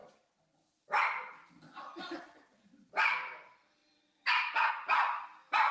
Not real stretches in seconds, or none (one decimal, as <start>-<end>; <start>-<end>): none